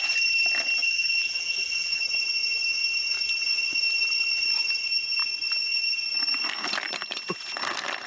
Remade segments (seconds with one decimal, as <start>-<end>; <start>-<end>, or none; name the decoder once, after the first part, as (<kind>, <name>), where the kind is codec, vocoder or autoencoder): 0.8-2.0 (vocoder, BigVGAN v2)